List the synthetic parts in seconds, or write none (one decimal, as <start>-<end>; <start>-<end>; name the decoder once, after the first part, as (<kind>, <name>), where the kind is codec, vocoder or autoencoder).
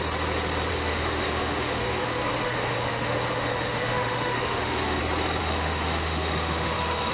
0.7-5.0 (autoencoder, DAC-VAE); 5.4-7.1